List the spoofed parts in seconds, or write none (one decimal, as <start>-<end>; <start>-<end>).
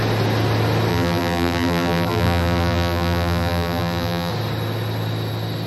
0.9-4.3